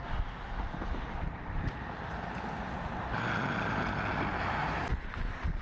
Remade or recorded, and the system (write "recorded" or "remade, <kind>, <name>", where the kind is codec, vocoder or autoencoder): recorded